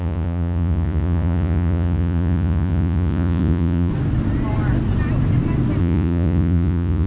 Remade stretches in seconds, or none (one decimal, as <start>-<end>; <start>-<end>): 0.0-3.9; 5.8-7.1